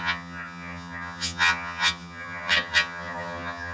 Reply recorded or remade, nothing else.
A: remade